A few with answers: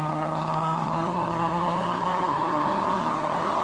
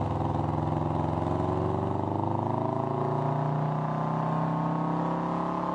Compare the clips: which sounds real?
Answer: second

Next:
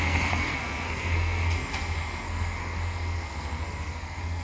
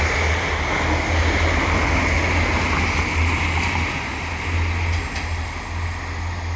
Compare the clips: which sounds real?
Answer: second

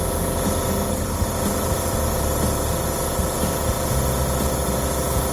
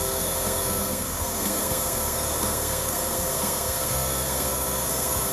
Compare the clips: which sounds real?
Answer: first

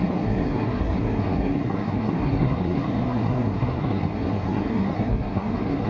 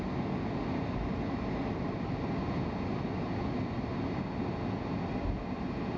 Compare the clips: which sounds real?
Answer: second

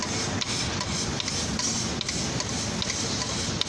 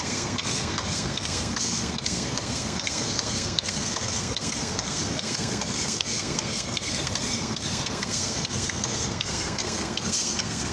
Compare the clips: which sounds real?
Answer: first